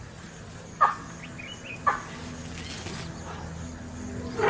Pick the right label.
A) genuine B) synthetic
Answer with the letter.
A